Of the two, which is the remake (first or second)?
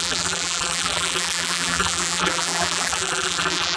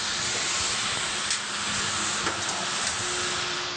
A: first